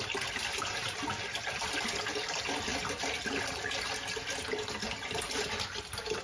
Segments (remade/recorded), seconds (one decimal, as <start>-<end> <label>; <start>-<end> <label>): 0.0-6.2 recorded